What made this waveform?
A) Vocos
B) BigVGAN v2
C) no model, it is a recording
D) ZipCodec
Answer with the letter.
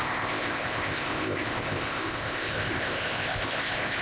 D